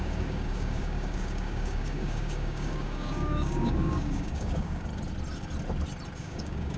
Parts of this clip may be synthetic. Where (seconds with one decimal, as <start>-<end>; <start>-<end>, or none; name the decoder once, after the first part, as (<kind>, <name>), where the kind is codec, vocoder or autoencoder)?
0.0-4.9 (codec, DAC); 6.2-6.8